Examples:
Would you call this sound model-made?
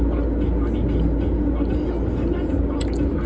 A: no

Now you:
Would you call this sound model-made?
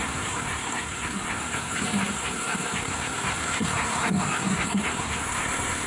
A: yes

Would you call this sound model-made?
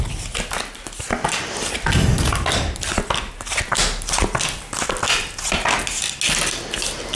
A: no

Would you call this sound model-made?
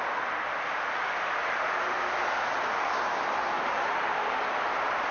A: no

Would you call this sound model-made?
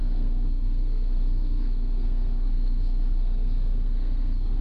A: yes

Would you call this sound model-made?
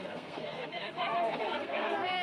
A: yes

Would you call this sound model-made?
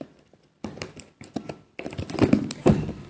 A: no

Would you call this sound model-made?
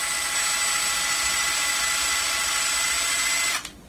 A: no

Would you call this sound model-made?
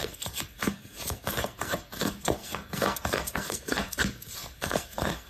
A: yes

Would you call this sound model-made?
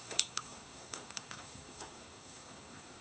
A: yes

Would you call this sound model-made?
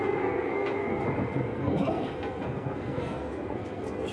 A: yes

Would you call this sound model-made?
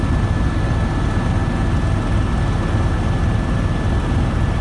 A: no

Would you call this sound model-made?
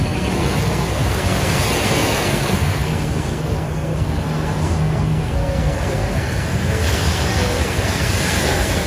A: yes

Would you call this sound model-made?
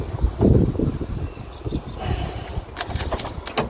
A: no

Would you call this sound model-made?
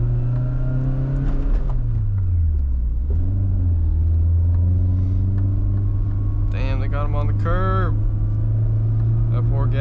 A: no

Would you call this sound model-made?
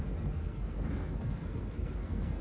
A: yes